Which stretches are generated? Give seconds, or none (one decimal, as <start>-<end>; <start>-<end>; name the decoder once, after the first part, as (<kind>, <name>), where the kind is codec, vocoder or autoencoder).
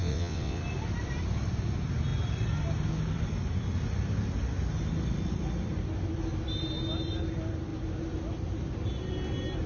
0.0-0.6 (vocoder, WaveNeXt)